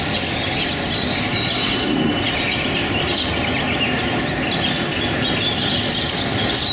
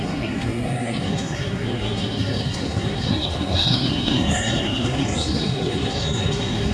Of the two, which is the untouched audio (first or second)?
first